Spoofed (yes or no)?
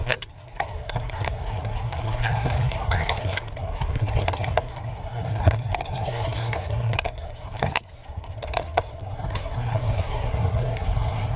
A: yes